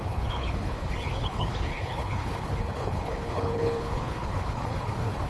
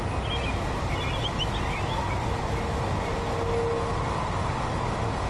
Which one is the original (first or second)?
second